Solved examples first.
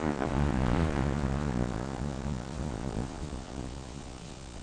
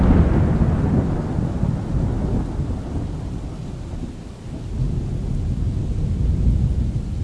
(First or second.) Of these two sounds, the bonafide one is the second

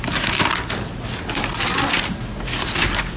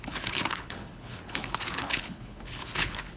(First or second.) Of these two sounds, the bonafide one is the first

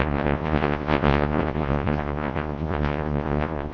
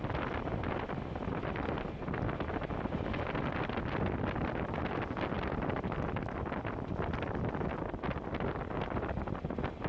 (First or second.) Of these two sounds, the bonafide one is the second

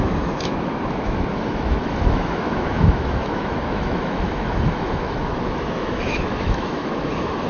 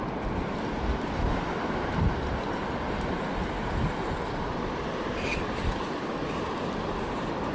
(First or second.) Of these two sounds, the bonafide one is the second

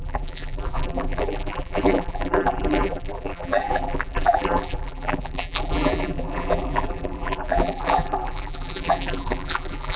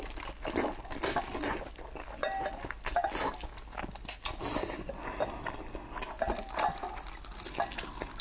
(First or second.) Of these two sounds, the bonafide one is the second